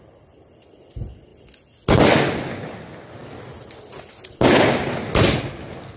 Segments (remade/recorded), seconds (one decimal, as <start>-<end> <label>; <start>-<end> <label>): 0.0-6.0 recorded